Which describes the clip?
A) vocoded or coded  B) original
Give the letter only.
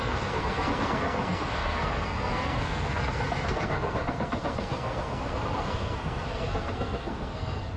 A